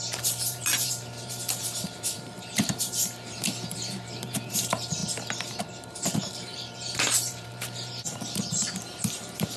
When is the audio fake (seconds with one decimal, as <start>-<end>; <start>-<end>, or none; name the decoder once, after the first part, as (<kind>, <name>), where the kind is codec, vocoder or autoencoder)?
0.0-5.0 (vocoder, BigVGAN v2); 5.9-9.6